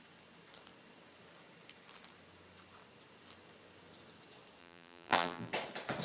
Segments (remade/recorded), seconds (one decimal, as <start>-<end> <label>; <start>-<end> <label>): 0.0-4.6 recorded; 4.6-5.5 remade; 5.5-6.0 recorded